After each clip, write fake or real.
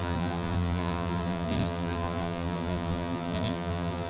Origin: fake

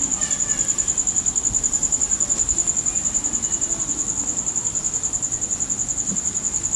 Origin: real